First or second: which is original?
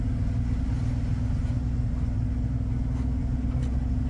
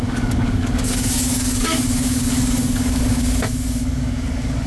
first